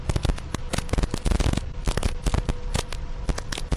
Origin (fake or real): real